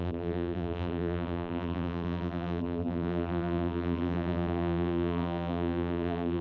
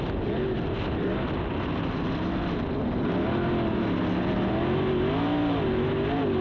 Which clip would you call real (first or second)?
second